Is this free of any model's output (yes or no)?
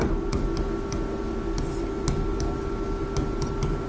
yes